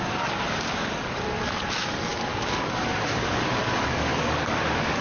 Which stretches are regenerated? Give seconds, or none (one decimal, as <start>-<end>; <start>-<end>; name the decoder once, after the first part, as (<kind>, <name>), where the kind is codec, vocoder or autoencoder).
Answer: 0.0-5.0 (codec, DAC)

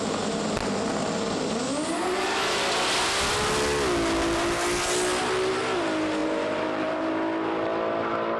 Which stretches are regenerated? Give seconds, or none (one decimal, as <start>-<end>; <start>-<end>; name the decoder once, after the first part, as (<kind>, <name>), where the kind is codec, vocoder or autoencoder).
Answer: 6.2-7.1 (vocoder, BigVGAN v2)

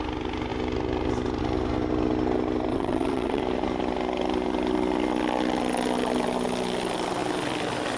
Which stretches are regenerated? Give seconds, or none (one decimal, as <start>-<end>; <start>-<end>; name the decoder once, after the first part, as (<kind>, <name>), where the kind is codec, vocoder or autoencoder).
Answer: 2.7-3.4 (vocoder, WaveNeXt)

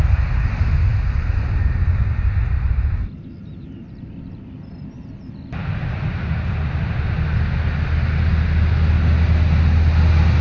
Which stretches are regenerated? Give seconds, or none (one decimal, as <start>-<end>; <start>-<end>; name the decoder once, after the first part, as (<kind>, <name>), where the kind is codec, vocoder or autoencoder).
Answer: 5.6-6.5 (vocoder, BigVGAN v2)

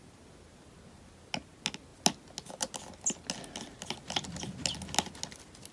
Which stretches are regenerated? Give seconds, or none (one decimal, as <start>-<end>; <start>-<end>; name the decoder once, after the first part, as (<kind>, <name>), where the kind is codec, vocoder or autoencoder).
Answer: none

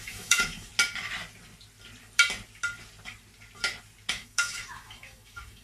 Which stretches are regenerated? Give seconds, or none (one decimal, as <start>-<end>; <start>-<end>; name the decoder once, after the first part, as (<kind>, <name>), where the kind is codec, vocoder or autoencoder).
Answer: 0.0-0.7 (autoencoder, DAC-VAE); 4.1-5.6

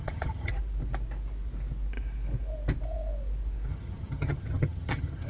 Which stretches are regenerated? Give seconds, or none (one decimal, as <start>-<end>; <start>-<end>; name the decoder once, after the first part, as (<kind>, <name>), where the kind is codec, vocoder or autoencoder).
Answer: 0.0-0.5 (vocoder, HiFi-GAN); 3.7-5.3

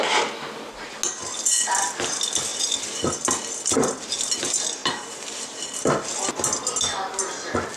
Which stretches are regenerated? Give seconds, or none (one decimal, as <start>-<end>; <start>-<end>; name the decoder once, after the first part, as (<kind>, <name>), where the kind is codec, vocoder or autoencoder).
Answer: none